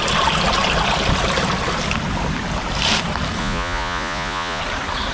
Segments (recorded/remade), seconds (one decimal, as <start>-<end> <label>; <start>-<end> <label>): 0.0-3.4 recorded; 3.4-4.6 remade; 4.6-5.1 recorded